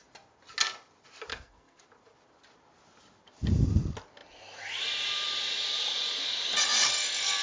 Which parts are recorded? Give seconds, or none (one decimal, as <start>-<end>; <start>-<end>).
0.0-1.3; 1.8-7.4